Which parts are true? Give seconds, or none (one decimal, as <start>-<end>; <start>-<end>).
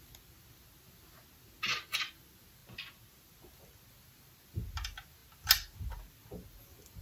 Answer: 0.0-7.0